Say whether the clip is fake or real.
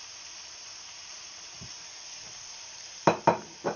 fake